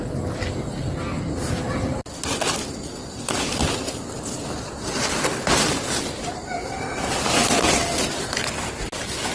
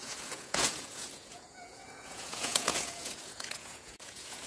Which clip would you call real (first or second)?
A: first